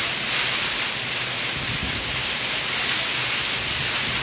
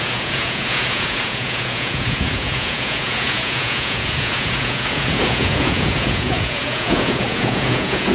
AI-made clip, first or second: second